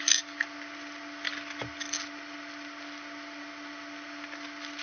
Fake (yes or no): no